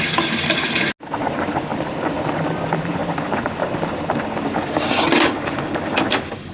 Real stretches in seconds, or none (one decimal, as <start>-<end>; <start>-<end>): 0.0-1.7; 2.4-6.5